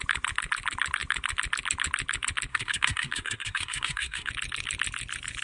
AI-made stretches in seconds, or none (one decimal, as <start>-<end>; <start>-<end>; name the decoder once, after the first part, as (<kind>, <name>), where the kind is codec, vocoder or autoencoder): 2.5-4.3 (codec, SNAC)

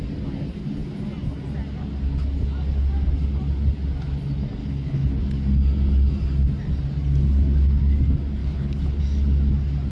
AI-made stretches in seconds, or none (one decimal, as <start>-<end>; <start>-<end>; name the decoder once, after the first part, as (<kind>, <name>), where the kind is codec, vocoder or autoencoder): 4.6-5.2 (codec, HILCodec); 8.4-9.0

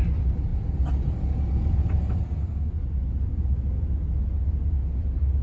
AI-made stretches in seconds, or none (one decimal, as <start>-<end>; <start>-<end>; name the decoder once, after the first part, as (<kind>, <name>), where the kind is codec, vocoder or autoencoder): none

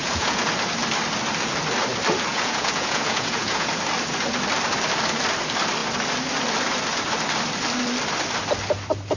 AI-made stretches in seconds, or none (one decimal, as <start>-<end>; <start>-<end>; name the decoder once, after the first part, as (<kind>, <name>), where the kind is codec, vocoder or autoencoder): 0.0-0.5 (vocoder, Vocos); 2.3-3.7